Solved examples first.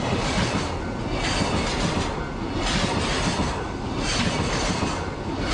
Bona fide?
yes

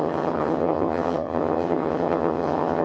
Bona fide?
no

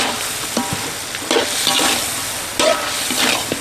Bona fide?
yes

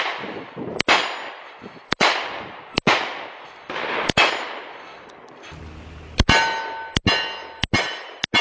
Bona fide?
yes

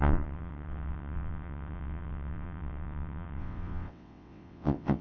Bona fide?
no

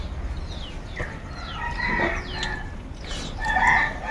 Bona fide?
yes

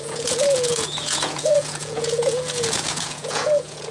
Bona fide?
no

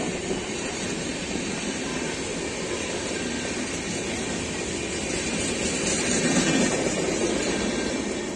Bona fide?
yes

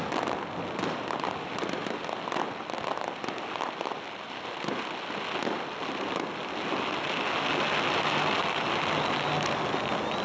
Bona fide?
yes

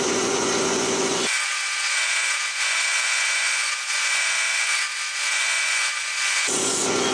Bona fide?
no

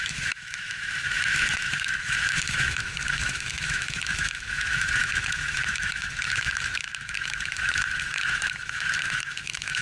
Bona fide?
no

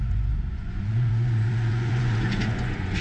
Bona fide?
no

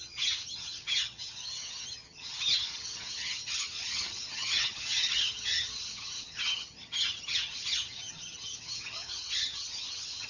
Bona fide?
no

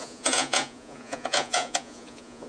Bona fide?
no